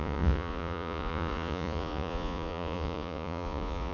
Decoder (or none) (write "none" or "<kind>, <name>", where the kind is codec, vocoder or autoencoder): vocoder, Vocos